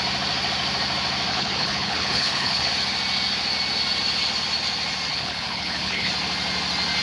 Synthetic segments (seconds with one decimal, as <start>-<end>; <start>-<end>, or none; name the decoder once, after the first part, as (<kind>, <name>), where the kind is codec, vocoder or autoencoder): 1.3-2.7 (codec, HILCodec); 5.1-6.1